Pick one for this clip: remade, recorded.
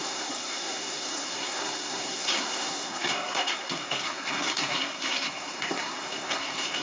remade